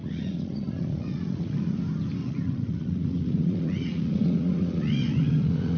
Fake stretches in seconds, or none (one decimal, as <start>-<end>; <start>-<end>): 0.0-1.8; 2.2-5.8